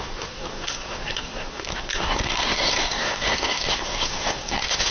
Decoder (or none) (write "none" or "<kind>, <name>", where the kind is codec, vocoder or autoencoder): codec, SNAC